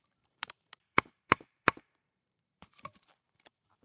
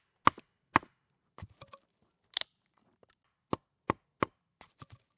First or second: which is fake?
first